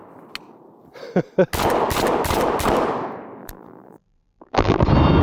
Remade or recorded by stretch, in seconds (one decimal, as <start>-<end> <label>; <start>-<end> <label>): 0.0-3.4 recorded; 3.4-4.8 remade; 4.8-5.2 recorded